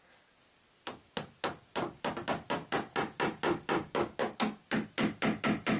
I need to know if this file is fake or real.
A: real